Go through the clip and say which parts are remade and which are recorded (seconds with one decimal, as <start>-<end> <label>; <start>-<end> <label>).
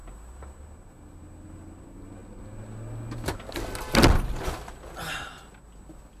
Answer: 0.0-6.2 recorded